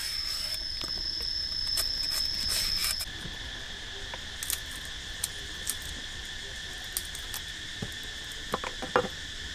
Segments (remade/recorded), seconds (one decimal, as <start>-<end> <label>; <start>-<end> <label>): 0.0-9.5 recorded